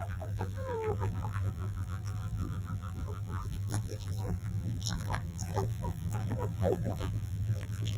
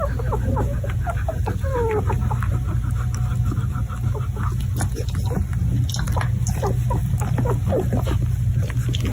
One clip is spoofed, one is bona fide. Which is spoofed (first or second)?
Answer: first